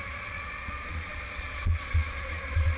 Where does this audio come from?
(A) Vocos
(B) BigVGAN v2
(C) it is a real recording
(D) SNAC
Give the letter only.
A